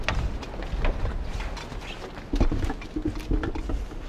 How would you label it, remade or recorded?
recorded